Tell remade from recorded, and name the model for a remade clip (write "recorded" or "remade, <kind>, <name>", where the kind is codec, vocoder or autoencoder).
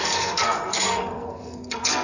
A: remade, codec, SNAC